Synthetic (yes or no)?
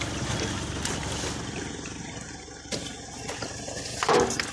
no